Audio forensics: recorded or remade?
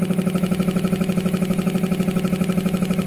recorded